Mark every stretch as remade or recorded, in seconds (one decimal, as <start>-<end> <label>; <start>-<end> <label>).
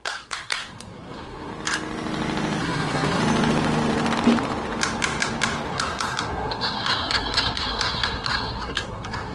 0.0-1.5 remade; 1.5-2.6 recorded; 2.6-3.2 remade; 3.2-5.7 recorded; 5.7-9.3 remade